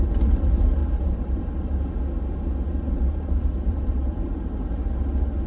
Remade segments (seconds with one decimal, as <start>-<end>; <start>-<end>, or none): 0.8-1.4; 2.7-4.7